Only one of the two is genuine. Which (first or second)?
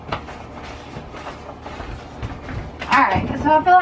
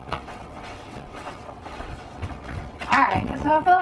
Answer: first